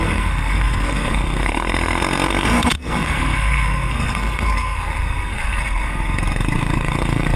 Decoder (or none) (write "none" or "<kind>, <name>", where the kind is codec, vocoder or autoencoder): codec, SNAC